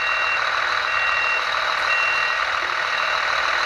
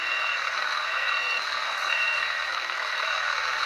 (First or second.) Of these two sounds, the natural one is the first